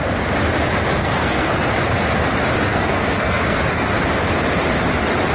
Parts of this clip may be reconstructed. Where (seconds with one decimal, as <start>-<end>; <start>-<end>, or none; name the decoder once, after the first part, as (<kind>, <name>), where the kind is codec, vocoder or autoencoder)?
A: 1.0-1.6 (codec, SNAC); 2.7-3.9